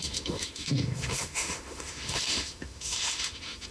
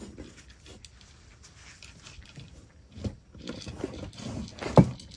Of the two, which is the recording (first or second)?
second